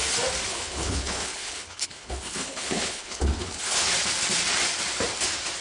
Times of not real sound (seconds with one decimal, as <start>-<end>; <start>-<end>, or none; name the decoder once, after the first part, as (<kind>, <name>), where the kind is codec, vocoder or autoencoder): 0.5-3.9 (codec, HILCodec)